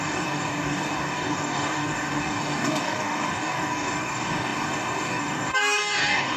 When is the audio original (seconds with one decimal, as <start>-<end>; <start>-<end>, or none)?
none